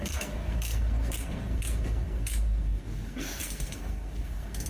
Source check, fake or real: fake